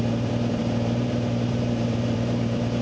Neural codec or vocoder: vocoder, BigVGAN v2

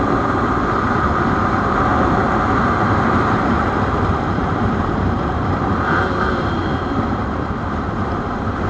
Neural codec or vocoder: vocoder, BigVGAN v2